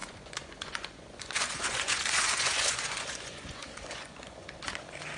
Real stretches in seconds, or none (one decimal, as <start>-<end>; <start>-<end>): none